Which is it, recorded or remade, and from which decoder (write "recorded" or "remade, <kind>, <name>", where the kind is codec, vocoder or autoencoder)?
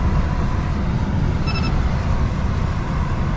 remade, vocoder, BigVGAN v2